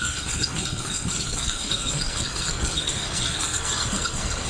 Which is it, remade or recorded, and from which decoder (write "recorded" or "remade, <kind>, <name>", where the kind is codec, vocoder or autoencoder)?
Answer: remade, codec, SNAC